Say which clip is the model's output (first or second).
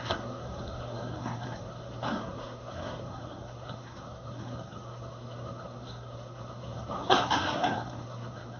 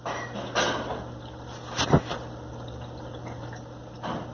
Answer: first